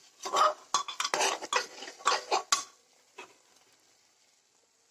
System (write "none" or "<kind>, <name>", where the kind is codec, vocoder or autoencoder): none